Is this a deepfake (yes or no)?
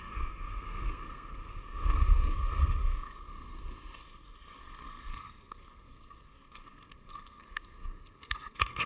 yes